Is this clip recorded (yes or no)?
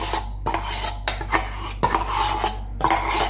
yes